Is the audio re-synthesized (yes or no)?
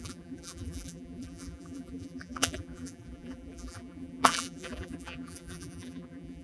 yes